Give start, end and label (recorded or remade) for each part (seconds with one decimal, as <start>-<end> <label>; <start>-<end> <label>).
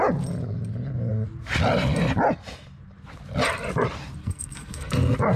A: 0.0-4.2 recorded; 4.2-4.9 remade; 4.9-5.4 recorded